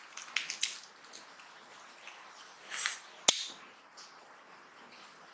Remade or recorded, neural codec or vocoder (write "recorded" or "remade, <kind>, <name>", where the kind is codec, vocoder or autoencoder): recorded